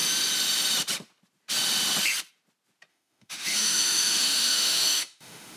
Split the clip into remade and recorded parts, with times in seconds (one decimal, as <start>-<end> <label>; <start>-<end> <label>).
0.0-2.9 recorded; 2.9-5.6 remade